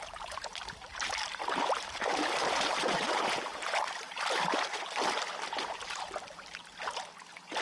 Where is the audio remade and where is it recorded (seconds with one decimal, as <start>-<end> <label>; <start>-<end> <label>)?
0.0-0.9 recorded; 0.9-3.2 remade; 3.2-7.6 recorded